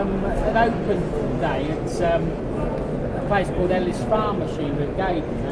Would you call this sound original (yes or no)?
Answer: yes